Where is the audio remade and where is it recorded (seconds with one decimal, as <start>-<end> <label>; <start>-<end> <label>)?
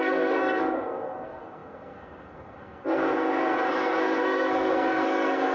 0.0-5.5 remade